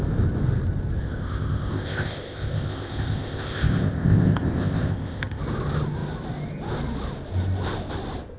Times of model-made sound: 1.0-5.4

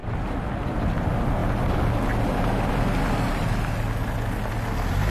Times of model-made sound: 0.0-0.8